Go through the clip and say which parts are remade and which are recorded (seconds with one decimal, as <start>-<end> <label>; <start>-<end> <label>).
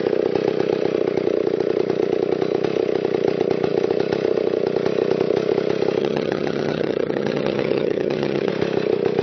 0.0-6.0 recorded; 6.0-8.5 remade; 8.5-9.2 recorded